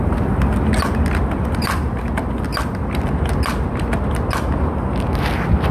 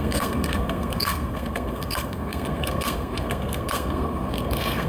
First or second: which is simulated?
second